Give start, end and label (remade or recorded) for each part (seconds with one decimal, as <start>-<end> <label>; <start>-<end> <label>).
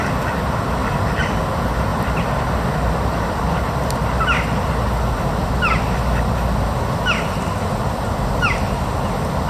0.0-0.8 recorded; 0.8-1.4 remade; 1.4-1.9 recorded; 1.9-4.7 remade; 4.7-5.4 recorded; 5.4-7.4 remade; 7.4-9.5 recorded